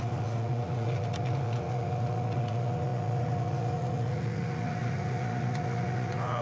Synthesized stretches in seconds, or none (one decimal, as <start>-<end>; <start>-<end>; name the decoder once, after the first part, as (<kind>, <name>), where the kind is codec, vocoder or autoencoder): 0.0-6.4 (vocoder, Vocos)